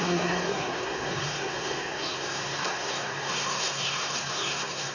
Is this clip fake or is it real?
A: fake